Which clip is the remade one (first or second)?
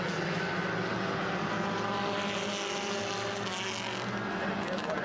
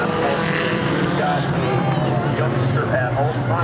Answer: second